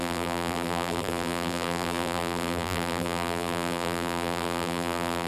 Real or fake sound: fake